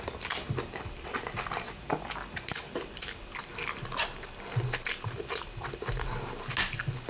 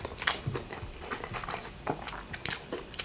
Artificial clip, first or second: second